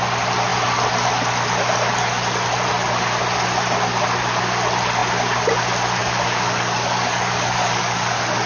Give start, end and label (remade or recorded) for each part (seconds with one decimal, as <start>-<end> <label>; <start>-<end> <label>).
0.0-6.0 recorded; 6.0-8.5 remade